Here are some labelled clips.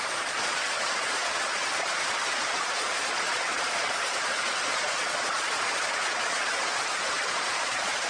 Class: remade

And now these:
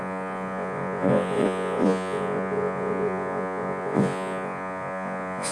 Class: remade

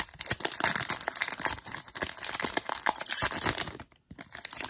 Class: recorded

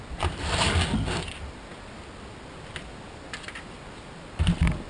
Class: recorded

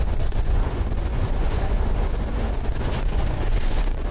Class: remade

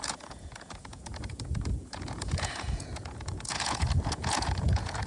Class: remade